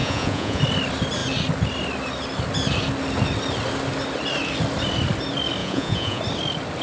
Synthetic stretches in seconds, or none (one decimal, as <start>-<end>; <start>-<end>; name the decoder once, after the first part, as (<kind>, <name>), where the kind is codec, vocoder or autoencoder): 0.0-0.6 (vocoder, Vocos); 5.6-6.2